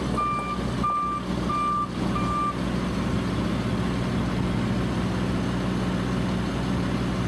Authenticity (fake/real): real